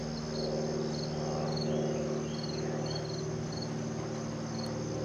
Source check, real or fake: real